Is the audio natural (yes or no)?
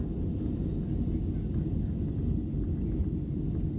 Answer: yes